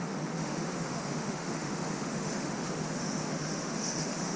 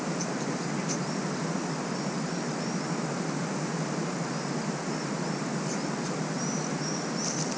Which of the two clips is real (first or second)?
second